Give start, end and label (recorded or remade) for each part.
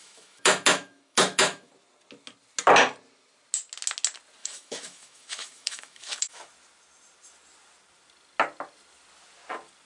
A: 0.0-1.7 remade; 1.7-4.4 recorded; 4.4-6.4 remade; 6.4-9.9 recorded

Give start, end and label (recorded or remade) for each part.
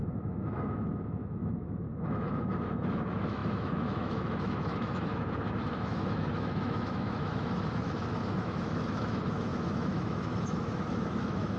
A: 0.0-11.6 remade